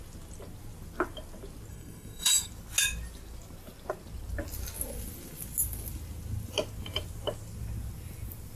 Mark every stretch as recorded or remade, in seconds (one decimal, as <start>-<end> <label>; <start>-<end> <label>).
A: 0.0-1.7 recorded; 1.7-2.5 remade; 2.5-8.6 recorded